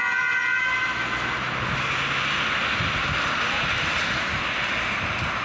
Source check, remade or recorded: recorded